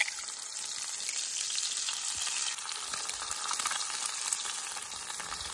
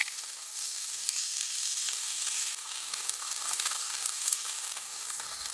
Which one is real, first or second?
first